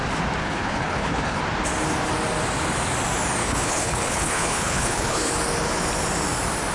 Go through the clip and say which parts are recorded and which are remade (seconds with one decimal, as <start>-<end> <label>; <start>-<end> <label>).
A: 0.0-0.4 recorded; 0.4-1.4 remade; 1.4-3.4 recorded; 3.4-5.3 remade; 5.3-6.7 recorded